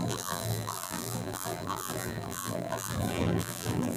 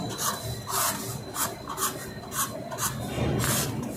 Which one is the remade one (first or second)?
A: first